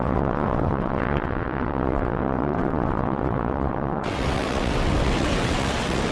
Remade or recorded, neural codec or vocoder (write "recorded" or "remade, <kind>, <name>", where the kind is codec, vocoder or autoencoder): remade, vocoder, WaveNeXt